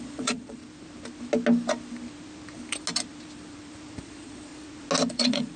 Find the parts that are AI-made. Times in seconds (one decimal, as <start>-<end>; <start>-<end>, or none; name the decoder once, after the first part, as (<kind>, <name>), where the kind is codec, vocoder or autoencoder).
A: 0.0-0.6 (vocoder, Vocos); 4.0-4.5; 5.1-5.6

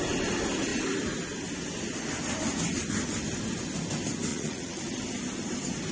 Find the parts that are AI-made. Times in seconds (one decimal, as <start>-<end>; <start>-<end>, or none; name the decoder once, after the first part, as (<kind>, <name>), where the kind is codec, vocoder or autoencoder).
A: 4.3-4.8 (vocoder, Vocos)

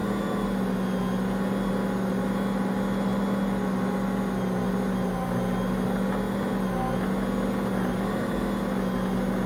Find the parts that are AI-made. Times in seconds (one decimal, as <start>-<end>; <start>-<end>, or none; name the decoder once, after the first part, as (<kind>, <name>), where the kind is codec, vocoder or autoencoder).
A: none

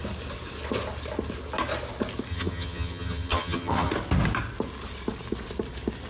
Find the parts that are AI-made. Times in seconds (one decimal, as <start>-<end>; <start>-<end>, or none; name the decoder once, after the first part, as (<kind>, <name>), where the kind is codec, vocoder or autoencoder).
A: 2.3-3.9 (vocoder, HiFi-GAN)

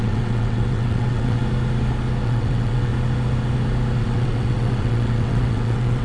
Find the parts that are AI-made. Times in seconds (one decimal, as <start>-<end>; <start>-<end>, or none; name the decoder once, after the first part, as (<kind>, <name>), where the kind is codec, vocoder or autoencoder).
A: 0.0-1.4 (vocoder, WaveNeXt); 2.2-2.9; 4.0-6.0

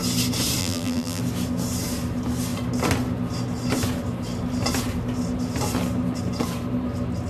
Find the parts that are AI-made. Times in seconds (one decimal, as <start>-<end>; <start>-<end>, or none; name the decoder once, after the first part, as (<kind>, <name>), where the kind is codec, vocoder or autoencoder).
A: 0.6-1.2 (vocoder, BigVGAN v2)